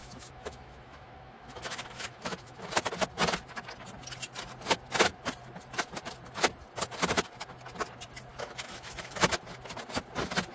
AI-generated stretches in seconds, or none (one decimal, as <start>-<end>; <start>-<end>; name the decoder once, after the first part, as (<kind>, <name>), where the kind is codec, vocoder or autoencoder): 0.0-2.7 (autoencoder, DAC-VAE); 8.3-9.3